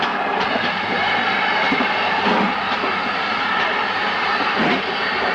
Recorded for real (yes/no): no